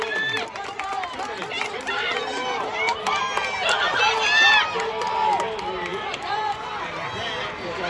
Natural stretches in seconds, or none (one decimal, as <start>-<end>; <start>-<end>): 0.0-5.9; 6.7-7.9